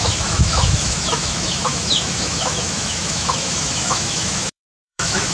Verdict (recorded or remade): remade